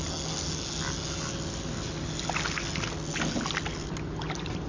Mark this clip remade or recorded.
recorded